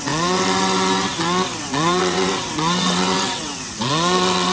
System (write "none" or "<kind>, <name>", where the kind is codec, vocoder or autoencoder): vocoder, WaveNeXt